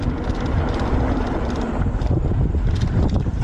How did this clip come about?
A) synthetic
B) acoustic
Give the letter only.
B